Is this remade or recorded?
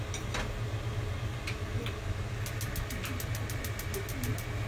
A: recorded